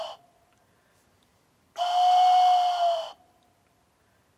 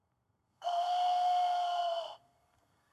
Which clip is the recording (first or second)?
first